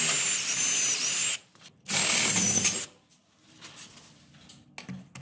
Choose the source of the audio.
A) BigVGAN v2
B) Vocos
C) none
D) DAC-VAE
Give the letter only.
C